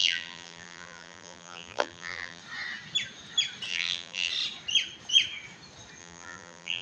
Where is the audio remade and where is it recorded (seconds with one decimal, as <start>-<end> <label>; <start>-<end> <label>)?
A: 0.0-2.4 remade; 2.4-3.7 recorded; 3.7-4.3 remade; 4.3-6.0 recorded; 6.0-6.8 remade

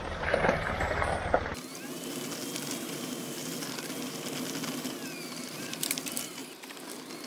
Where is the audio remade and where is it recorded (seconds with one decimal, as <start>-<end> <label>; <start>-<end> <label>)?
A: 0.0-1.5 remade; 1.5-2.8 recorded; 2.8-3.4 remade; 3.4-5.4 recorded; 5.4-7.3 remade

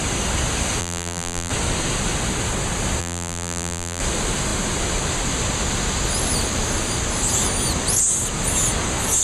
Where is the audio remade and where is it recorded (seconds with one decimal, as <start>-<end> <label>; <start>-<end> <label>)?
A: 0.0-0.8 recorded; 0.8-1.5 remade; 1.5-3.0 recorded; 3.0-4.0 remade; 4.0-9.2 recorded

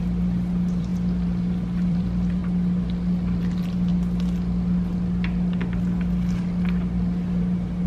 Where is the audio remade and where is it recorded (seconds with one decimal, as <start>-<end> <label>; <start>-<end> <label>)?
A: 0.0-2.4 remade; 2.4-3.4 recorded; 3.4-3.9 remade; 3.9-7.3 recorded; 7.3-7.9 remade

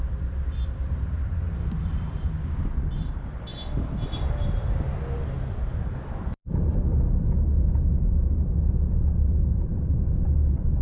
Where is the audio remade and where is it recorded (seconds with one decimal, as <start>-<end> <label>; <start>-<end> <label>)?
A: 0.0-10.8 remade

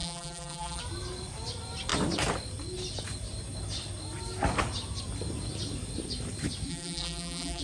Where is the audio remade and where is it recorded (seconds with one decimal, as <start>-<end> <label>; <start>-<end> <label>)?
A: 0.0-0.8 remade; 0.8-6.7 recorded; 6.7-7.6 remade

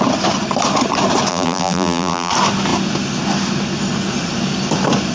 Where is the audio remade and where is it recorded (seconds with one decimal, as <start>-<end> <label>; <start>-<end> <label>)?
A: 0.0-1.3 recorded; 1.3-2.3 remade; 2.3-5.1 recorded

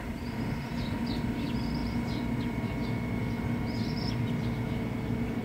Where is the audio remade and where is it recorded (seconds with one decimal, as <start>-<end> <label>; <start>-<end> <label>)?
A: 0.0-1.8 recorded; 1.8-4.2 remade; 4.2-5.4 recorded